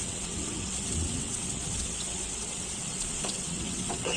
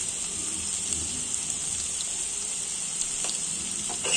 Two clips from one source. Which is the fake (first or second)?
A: first